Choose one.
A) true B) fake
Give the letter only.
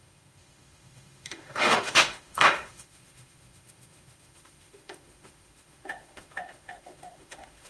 B